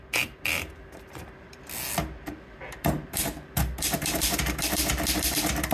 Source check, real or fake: real